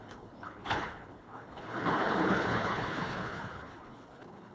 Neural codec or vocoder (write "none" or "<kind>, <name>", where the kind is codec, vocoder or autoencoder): codec, HILCodec